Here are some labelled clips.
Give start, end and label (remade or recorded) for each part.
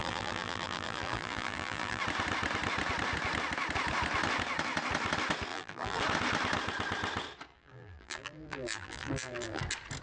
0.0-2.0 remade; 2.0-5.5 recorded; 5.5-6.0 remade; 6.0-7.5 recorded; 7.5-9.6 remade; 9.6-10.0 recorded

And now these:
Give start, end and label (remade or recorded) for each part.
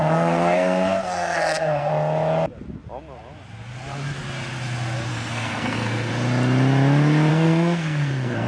0.0-1.9 remade; 1.9-5.1 recorded; 5.1-6.1 remade; 6.1-7.3 recorded; 7.3-8.5 remade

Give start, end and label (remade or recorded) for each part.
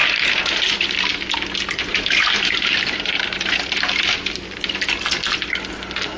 0.0-1.2 remade; 1.2-1.9 recorded; 1.9-5.0 remade; 5.0-6.2 recorded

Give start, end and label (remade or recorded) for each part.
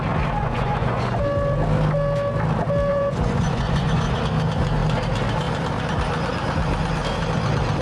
0.0-0.4 recorded; 0.4-1.2 remade; 1.2-2.9 recorded; 2.9-4.2 remade; 4.2-7.8 recorded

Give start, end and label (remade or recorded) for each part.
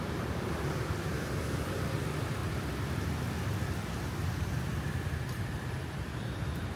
0.0-2.4 remade; 2.4-3.9 recorded; 3.9-6.8 remade